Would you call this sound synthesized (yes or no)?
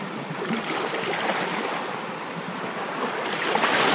yes